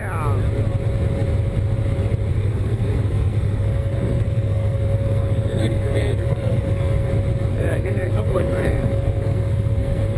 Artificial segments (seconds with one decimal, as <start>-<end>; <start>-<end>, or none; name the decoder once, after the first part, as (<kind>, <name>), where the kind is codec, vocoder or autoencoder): 2.3-7.1 (codec, SNAC); 7.5-10.2